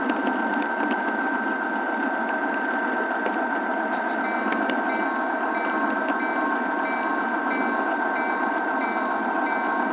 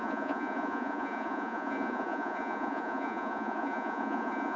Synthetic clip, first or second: second